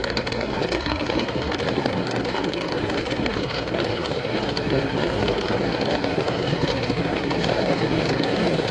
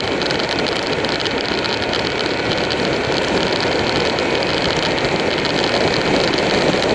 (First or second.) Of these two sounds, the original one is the second